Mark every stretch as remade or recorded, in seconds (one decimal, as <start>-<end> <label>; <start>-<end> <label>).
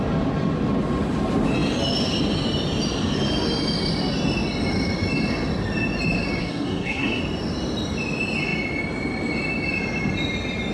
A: 0.0-6.4 recorded; 6.4-7.2 remade; 7.2-10.7 recorded